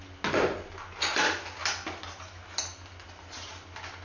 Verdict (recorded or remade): recorded